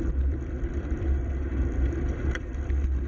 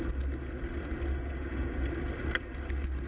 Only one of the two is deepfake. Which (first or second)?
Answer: first